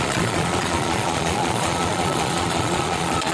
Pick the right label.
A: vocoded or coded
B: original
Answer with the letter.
A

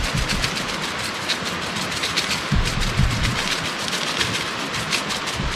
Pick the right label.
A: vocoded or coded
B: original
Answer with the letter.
B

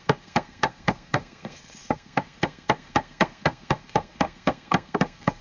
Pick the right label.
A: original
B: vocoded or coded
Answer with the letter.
B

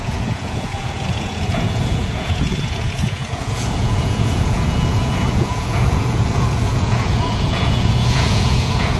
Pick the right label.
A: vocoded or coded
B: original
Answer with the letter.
A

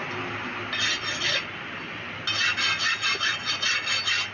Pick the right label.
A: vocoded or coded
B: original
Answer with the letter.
B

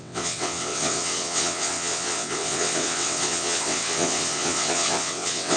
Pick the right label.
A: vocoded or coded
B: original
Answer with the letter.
A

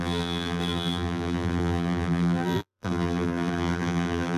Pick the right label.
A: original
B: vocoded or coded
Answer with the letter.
B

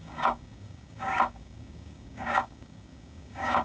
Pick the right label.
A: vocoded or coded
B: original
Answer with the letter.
A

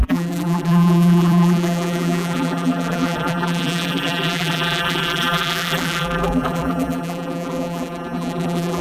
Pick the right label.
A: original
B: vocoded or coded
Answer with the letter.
B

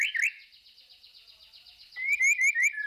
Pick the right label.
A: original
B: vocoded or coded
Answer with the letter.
A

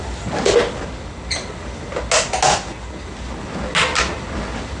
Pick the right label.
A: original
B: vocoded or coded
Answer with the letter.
A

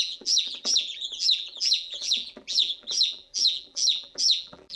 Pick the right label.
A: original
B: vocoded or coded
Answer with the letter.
B